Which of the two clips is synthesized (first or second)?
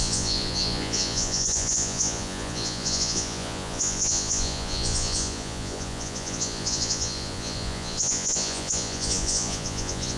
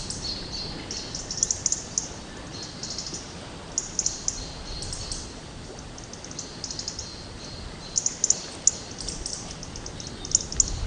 first